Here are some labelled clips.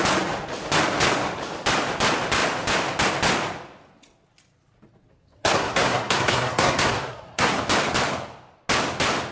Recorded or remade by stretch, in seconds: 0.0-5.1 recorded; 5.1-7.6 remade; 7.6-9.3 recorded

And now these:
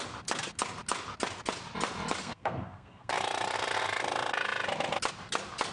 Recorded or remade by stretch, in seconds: 0.0-2.2 recorded; 2.2-3.1 remade; 3.1-5.7 recorded